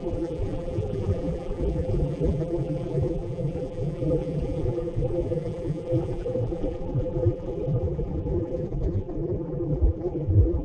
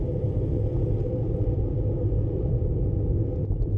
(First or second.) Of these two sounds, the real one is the second